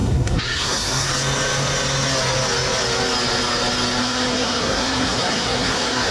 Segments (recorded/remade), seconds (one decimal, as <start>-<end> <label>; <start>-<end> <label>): 0.0-1.1 remade; 1.1-4.0 recorded; 4.0-6.1 remade